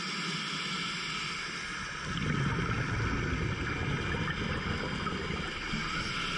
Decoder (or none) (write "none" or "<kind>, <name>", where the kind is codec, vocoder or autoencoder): none